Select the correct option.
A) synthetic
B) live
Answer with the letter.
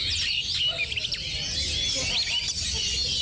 B